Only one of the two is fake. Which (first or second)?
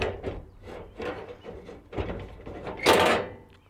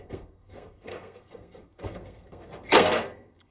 second